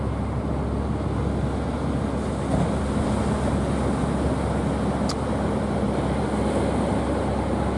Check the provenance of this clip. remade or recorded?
recorded